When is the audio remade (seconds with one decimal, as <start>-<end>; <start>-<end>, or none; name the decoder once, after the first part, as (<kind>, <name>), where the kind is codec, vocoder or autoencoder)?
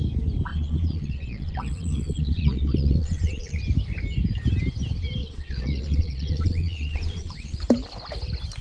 0.5-3.6 (vocoder, Vocos); 5.2-7.6